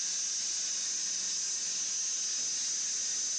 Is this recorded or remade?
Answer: recorded